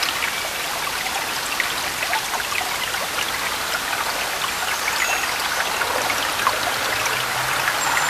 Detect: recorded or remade recorded